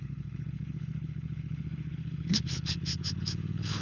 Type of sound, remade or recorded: remade